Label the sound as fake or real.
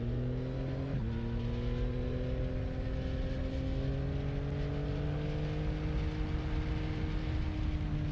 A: real